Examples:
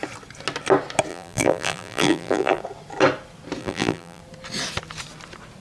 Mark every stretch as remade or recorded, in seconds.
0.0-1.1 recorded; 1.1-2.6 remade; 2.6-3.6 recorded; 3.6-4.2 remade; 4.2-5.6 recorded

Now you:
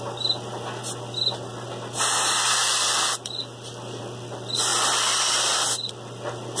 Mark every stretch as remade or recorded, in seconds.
0.0-2.6 recorded; 2.6-4.0 remade; 4.0-4.7 recorded; 4.7-5.9 remade; 5.9-6.6 recorded

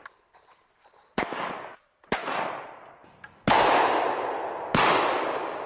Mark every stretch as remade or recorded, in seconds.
0.0-2.2 remade; 2.2-5.7 recorded